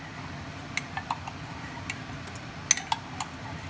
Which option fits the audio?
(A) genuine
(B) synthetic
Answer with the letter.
A